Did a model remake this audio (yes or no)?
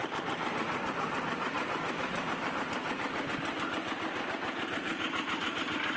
no